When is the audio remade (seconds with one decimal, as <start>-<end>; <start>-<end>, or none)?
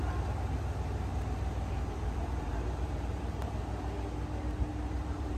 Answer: 1.1-3.6; 4.7-5.4